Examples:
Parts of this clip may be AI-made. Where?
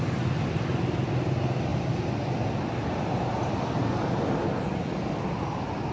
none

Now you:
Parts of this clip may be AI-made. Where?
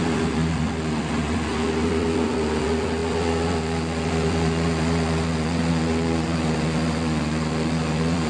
0.0-8.3 (vocoder, Vocos)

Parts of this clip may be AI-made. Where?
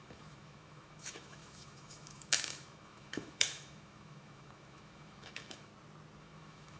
0.0-5.7 (autoencoder, DAC-VAE); 6.2-6.8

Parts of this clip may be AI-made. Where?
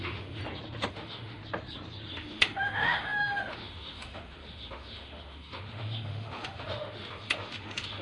0.0-0.4 (autoencoder, DAC-VAE); 0.9-1.4; 2.1-8.0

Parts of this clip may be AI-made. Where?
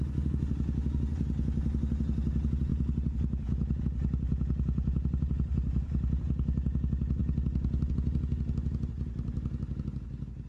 none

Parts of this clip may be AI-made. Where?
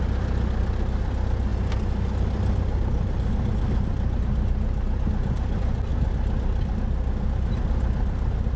none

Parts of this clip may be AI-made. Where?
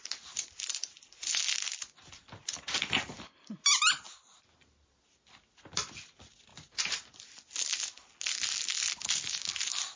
none